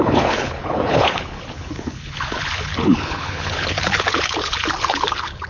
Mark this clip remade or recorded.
remade